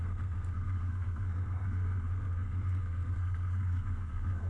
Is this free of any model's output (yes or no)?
no